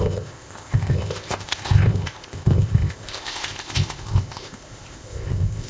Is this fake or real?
fake